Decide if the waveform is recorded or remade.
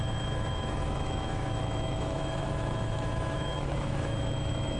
remade